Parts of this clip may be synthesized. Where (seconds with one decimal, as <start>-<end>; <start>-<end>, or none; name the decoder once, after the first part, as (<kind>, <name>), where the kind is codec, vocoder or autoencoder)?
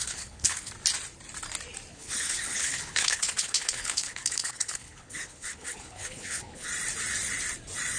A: 0.0-0.7 (codec, HILCodec); 1.9-6.7